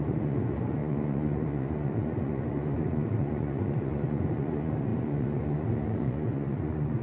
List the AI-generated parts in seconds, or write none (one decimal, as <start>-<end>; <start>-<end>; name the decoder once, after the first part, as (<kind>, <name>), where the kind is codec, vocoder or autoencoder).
0.0-7.0 (vocoder, Vocos)